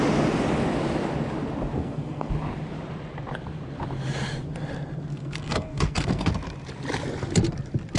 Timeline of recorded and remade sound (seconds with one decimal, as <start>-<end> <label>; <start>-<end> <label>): 0.0-1.8 recorded; 1.8-2.3 remade; 2.3-5.1 recorded; 5.1-6.3 remade; 6.3-8.0 recorded